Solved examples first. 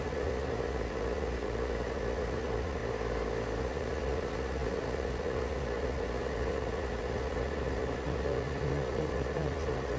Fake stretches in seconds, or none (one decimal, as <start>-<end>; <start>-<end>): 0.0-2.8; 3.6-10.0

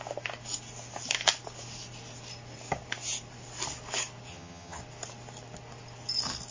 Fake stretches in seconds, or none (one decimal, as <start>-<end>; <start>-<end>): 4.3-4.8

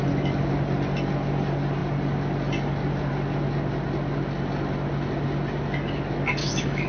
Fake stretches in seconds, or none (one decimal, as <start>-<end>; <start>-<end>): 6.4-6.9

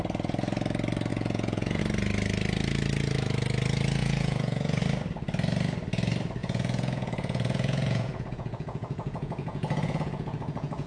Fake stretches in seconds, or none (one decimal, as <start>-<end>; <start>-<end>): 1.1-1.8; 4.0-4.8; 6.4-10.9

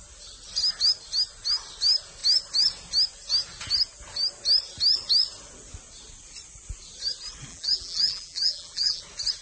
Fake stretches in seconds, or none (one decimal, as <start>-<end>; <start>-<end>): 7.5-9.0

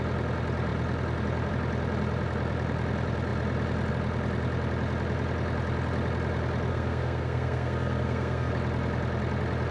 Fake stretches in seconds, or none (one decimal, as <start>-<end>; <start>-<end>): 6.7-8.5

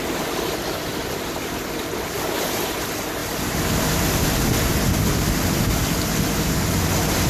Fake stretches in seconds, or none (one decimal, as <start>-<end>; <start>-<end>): none

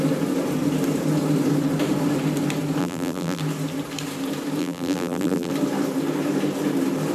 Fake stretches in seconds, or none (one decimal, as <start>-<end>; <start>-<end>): 2.8-3.4; 4.6-5.5